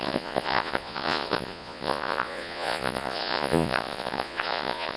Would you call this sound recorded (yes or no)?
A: no